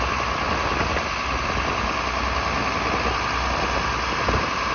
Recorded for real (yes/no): yes